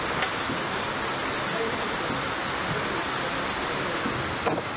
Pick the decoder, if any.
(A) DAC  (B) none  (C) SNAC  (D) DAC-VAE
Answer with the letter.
B